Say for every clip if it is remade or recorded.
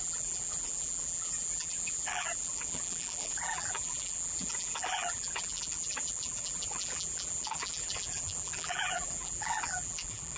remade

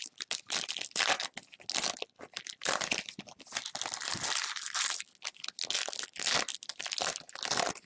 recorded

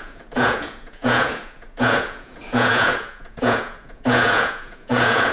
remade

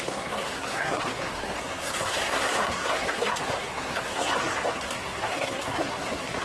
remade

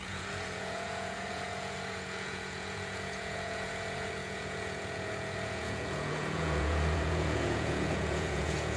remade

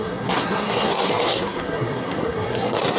remade